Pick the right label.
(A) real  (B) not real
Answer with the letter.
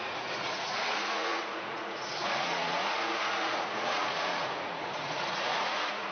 B